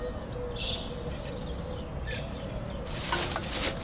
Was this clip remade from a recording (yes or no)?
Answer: no